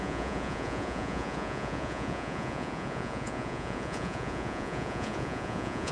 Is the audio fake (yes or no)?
yes